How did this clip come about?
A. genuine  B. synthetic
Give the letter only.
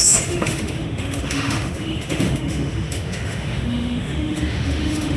B